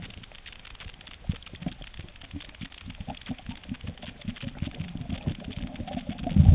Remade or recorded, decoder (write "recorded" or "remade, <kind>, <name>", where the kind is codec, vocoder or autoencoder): recorded